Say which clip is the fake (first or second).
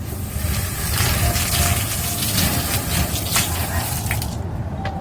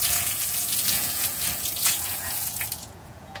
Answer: second